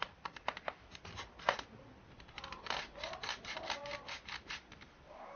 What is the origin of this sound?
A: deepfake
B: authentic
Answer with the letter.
B